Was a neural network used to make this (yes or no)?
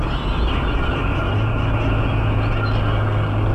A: no